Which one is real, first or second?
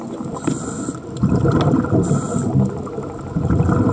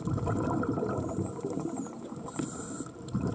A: first